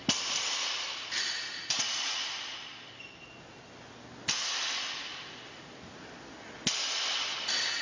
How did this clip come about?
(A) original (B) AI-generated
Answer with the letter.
A